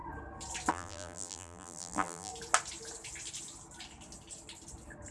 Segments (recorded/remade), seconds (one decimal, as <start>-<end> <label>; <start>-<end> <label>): 0.0-0.7 recorded; 0.7-2.3 remade; 2.3-5.1 recorded